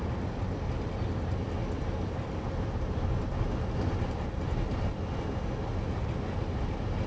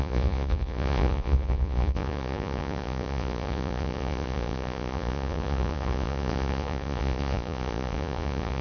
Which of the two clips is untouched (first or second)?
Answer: first